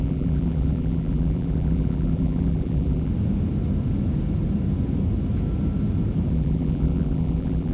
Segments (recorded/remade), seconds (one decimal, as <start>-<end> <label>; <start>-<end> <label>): 0.0-3.1 remade; 3.1-6.3 recorded; 6.3-7.7 remade